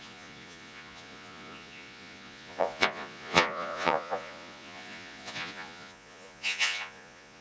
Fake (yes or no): yes